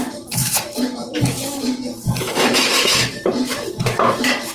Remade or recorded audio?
remade